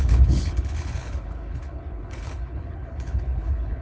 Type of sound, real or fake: fake